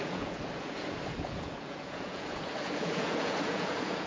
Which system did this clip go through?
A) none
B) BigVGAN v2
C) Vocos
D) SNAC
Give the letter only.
C